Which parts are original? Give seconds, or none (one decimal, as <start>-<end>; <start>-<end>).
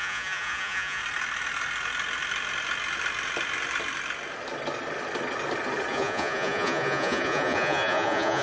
1.0-5.9